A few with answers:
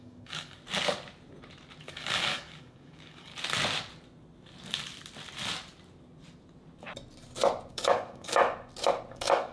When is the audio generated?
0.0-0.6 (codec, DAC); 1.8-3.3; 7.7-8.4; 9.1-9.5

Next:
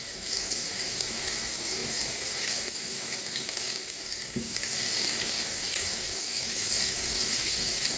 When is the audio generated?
0.0-8.0 (codec, DAC)

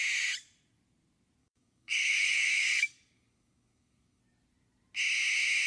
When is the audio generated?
1.4-4.2 (codec, DAC)

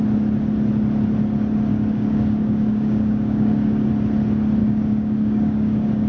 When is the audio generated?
1.7-3.9 (codec, DAC); 4.6-6.1

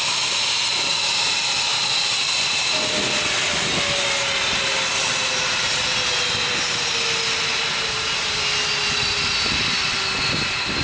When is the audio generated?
none

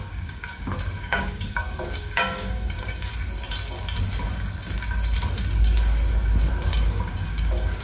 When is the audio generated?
0.0-3.1 (codec, DAC); 6.5-7.8

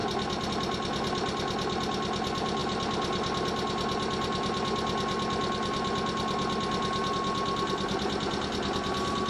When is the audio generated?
none